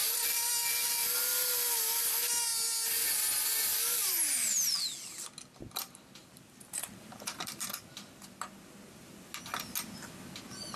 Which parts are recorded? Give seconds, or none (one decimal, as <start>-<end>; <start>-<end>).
0.0-6.2; 7.7-10.8

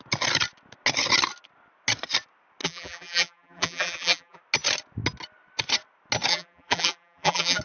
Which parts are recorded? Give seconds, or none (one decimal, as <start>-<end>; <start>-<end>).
0.0-2.6; 4.4-6.3

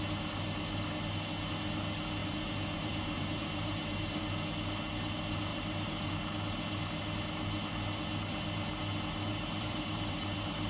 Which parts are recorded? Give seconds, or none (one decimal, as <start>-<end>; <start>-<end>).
0.0-2.2; 4.2-5.5; 6.1-9.3